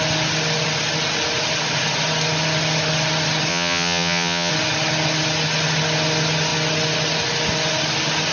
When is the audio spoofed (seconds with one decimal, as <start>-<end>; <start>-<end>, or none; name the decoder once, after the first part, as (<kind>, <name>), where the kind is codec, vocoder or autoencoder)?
3.5-4.5 (vocoder, HiFi-GAN)